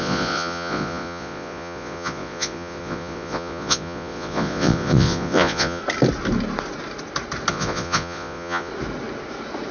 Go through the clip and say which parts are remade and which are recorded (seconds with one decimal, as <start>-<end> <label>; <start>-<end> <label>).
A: 0.0-5.8 remade; 5.8-7.5 recorded; 7.5-8.7 remade; 8.7-9.7 recorded